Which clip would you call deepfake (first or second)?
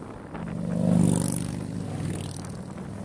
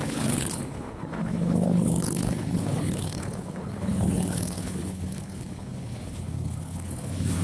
second